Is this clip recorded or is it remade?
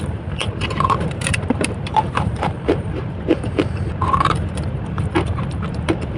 remade